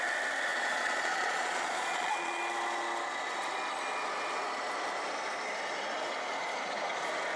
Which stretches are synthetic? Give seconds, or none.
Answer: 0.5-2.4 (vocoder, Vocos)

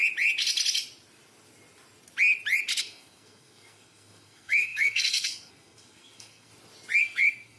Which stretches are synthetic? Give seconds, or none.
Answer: 2.8-6.5 (codec, SNAC); 7.0-7.6